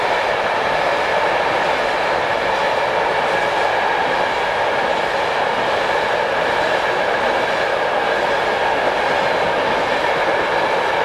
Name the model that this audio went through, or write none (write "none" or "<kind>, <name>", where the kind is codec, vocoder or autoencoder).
none